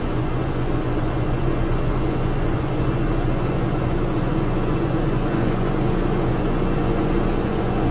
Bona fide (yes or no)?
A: no